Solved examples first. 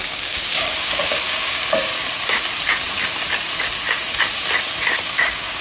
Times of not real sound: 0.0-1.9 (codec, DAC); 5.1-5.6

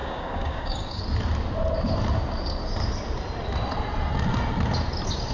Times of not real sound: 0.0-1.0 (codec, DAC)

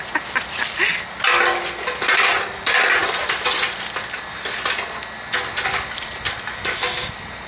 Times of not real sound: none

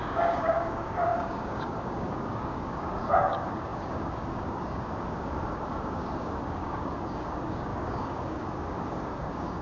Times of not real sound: 0.0-9.6 (codec, DAC)

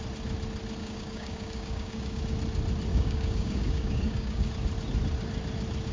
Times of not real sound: 0.8-2.2 (codec, DAC); 2.9-4.5

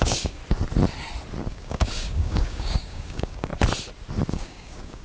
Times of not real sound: 0.0-0.4 (codec, DAC); 1.5-3.5; 4.3-5.0

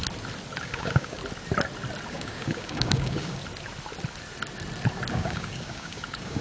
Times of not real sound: 0.6-1.2 (codec, DAC); 2.1-3.4; 5.1-6.4

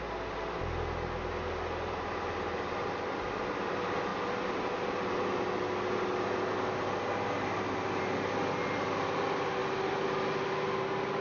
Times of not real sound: none